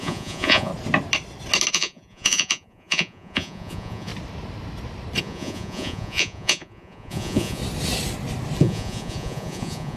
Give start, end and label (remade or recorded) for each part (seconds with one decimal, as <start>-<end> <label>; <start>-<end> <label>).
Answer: 0.0-0.7 remade; 0.7-1.7 recorded; 1.7-4.1 remade; 4.1-5.2 recorded; 5.2-7.6 remade; 7.6-8.6 recorded; 8.6-10.0 remade

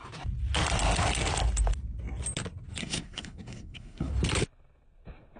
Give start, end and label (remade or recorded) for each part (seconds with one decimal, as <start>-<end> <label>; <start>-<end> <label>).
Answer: 0.0-2.8 recorded; 2.8-4.1 remade; 4.1-5.4 recorded

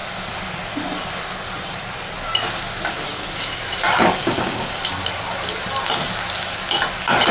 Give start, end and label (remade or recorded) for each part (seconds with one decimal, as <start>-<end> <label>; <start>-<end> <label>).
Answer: 0.0-4.2 recorded; 4.2-4.8 remade; 4.8-7.3 recorded